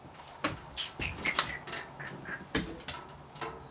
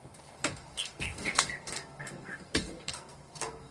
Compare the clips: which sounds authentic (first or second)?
first